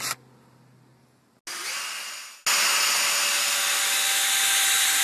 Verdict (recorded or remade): recorded